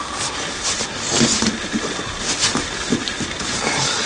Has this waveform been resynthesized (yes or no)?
no